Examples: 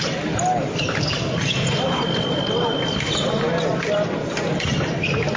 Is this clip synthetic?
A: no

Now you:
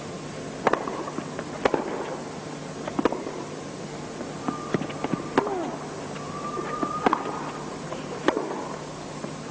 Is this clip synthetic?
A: no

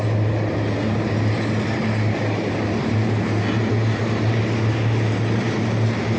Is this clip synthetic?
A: no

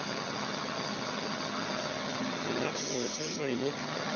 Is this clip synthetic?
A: yes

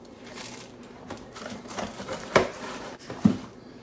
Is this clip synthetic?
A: yes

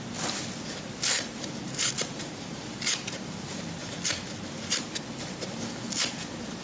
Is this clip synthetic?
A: yes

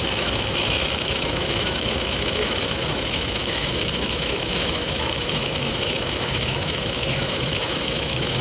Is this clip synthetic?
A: yes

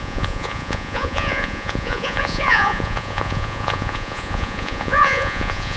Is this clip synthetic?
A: yes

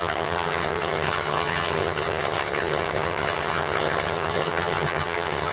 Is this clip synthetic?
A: yes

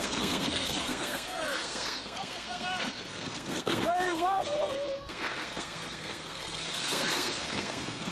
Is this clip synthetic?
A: yes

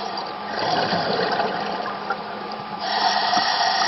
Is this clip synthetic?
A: yes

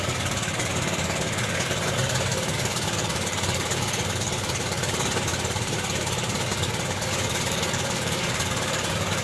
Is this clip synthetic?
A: yes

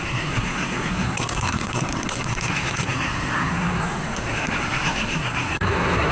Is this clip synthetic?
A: yes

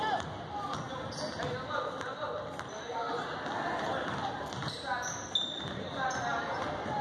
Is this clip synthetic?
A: no